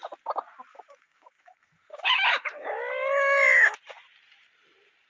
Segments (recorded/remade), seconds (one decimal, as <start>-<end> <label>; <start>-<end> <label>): 0.0-0.7 recorded; 0.7-3.8 remade; 3.8-5.1 recorded